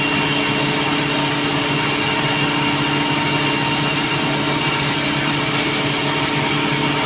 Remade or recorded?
recorded